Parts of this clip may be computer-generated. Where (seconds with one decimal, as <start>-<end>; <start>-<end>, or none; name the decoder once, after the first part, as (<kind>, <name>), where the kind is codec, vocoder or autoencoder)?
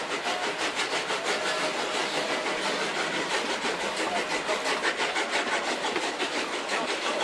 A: none